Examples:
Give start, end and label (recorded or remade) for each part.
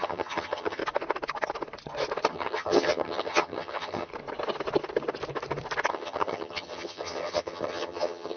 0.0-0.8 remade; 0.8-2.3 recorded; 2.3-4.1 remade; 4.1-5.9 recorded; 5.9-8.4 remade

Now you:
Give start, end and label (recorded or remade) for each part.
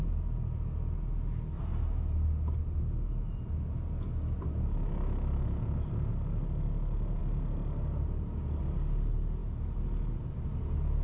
0.0-11.0 recorded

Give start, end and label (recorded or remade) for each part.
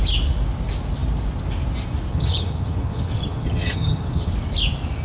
0.0-2.1 recorded; 2.1-4.3 remade; 4.3-5.0 recorded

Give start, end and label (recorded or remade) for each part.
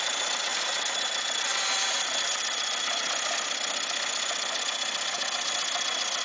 0.0-6.2 recorded